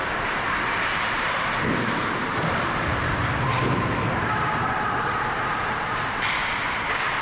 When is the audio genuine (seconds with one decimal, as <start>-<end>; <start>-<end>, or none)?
6.4-7.2